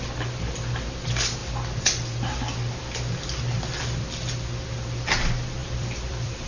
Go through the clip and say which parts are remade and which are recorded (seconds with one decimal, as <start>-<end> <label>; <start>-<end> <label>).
0.0-5.6 recorded; 5.6-6.5 remade